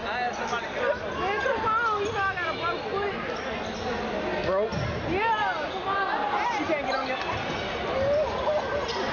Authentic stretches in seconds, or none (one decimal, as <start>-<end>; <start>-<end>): 0.0-9.1